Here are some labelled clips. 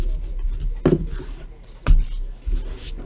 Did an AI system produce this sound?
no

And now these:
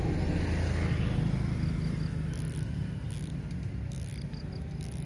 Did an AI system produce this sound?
no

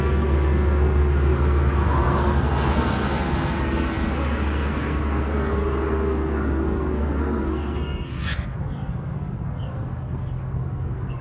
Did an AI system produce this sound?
yes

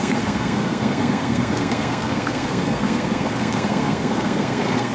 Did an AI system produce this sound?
yes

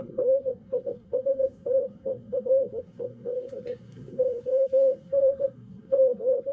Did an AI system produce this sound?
yes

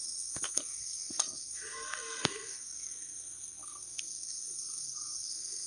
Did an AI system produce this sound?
yes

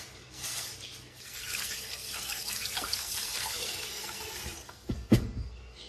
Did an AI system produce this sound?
yes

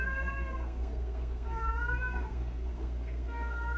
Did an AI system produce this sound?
yes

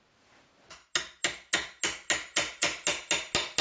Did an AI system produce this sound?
no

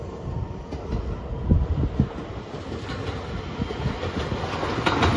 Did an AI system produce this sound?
no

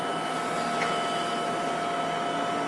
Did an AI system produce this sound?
no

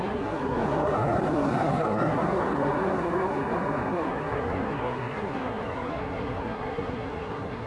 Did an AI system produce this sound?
yes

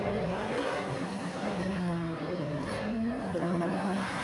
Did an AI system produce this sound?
yes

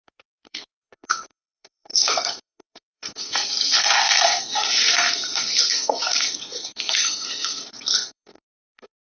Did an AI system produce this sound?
yes